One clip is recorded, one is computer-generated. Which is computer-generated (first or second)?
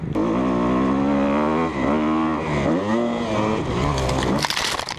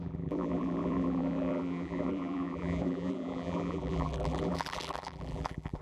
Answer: second